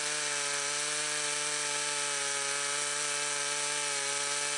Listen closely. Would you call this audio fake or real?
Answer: real